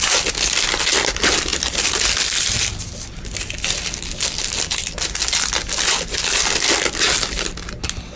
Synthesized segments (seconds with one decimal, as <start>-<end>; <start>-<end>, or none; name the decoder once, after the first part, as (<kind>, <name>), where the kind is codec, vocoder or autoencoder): none